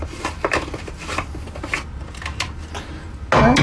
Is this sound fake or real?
real